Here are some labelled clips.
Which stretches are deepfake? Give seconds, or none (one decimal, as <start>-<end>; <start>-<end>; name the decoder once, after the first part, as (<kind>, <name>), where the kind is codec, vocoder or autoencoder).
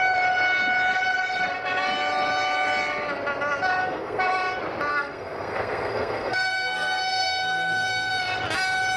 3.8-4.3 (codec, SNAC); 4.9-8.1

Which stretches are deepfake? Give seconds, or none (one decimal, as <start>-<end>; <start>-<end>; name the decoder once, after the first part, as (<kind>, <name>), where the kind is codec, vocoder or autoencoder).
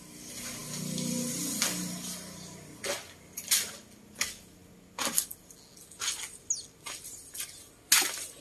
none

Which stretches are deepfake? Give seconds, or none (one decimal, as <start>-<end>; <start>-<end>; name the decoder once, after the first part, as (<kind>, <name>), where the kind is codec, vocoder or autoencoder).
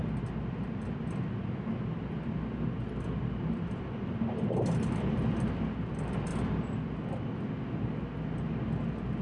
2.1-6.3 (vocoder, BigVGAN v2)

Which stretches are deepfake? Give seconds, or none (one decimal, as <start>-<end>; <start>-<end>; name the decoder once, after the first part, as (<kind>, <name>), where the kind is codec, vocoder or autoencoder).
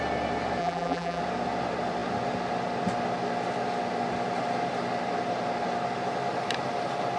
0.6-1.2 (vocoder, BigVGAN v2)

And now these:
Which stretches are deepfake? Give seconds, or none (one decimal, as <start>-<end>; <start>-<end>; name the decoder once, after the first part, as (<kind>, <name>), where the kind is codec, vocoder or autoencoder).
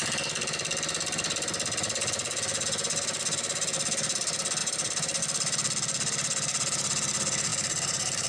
4.6-5.2 (vocoder, BigVGAN v2); 7.5-8.3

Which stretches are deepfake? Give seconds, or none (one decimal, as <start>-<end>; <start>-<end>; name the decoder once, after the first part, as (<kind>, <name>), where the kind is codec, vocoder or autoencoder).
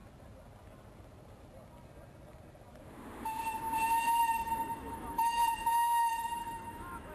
4.2-5.4 (autoencoder, DAC-VAE); 6.0-7.1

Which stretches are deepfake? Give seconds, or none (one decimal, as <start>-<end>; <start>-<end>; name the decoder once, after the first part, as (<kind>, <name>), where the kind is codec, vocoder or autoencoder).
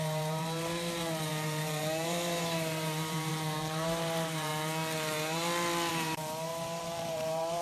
0.0-4.5 (vocoder, BigVGAN v2); 5.9-7.6